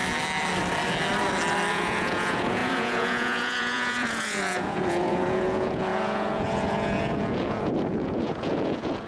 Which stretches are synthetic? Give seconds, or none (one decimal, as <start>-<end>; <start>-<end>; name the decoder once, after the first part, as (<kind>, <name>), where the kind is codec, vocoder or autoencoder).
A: 1.7-9.1 (vocoder, Vocos)